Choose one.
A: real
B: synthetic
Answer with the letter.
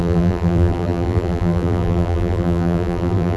B